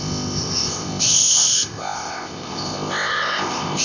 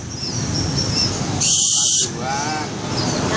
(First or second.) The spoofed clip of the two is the first